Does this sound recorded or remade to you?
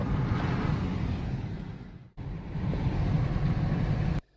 recorded